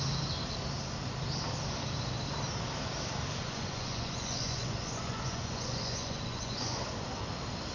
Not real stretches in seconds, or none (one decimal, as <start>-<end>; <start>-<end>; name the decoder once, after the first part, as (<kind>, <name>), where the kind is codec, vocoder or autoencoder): 3.4-6.8 (vocoder, Vocos)